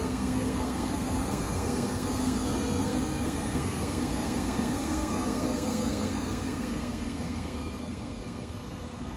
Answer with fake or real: fake